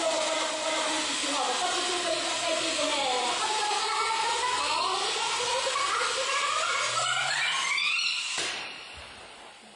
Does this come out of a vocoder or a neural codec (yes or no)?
no